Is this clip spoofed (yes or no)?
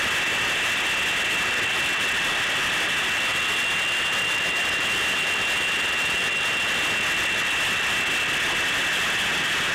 no